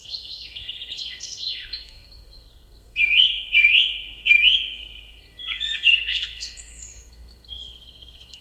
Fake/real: fake